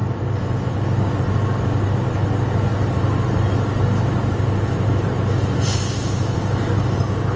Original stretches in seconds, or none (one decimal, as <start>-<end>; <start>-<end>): 0.0-7.4